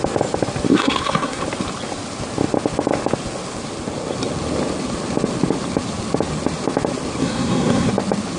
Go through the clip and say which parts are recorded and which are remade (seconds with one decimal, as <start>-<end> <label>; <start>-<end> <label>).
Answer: 0.0-0.7 recorded; 0.7-1.4 remade; 1.4-7.2 recorded; 7.2-7.9 remade; 7.9-8.4 recorded